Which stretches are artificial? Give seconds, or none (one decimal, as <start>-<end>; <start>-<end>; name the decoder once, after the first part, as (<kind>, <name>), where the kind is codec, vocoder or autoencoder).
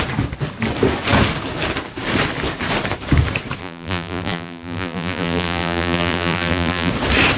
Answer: 3.6-6.9 (vocoder, BigVGAN v2)